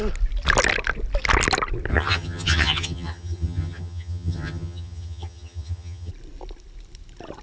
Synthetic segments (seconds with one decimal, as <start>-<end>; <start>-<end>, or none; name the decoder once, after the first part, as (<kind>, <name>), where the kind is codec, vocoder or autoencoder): 1.9-6.1 (vocoder, HiFi-GAN)

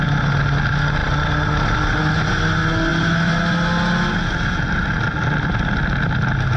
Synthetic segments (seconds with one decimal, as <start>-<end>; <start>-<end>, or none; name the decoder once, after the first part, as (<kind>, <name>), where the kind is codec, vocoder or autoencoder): none

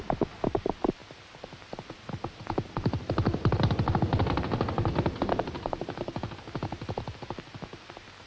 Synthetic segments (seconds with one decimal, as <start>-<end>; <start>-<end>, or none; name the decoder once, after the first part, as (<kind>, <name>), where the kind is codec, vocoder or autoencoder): none

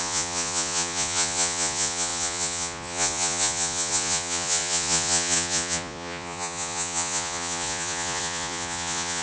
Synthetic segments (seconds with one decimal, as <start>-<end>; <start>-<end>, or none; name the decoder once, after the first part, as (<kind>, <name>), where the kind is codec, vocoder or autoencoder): 0.0-9.2 (vocoder, Vocos)

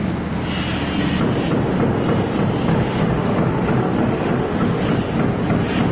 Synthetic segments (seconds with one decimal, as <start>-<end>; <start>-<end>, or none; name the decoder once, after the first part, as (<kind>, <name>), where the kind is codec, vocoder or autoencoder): 2.7-4.8 (autoencoder, DAC-VAE)

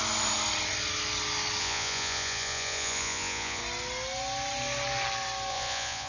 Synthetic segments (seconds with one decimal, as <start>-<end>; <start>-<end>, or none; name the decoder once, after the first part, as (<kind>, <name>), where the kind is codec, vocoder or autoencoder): 1.6-3.6 (vocoder, Vocos); 5.5-6.1

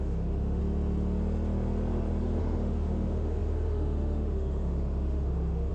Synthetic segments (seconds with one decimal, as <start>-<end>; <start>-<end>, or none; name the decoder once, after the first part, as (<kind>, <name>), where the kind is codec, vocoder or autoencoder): 0.0-0.6 (autoencoder, DAC-VAE); 2.4-5.7